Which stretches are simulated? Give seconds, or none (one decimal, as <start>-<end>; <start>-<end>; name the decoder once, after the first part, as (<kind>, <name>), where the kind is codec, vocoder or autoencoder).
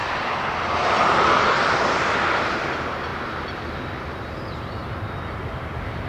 4.8-5.5 (vocoder, BigVGAN v2)